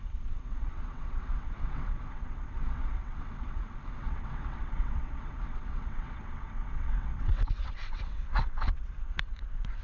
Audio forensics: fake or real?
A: fake